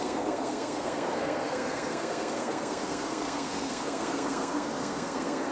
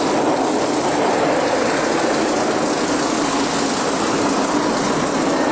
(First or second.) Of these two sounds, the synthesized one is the first